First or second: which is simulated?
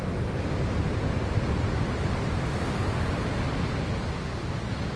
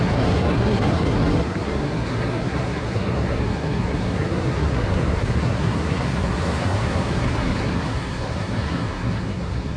second